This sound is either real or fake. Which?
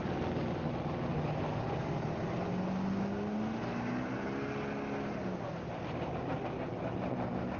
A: real